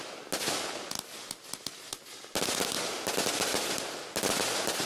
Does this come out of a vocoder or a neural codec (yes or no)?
no